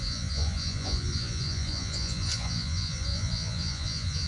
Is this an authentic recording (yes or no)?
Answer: no